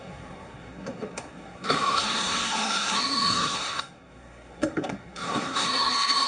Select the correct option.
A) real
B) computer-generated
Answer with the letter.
B